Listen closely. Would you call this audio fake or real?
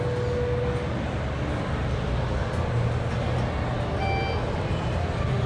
real